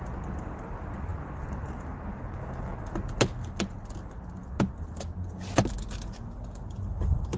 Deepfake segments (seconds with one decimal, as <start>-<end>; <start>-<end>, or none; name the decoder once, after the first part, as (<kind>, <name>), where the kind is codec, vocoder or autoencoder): none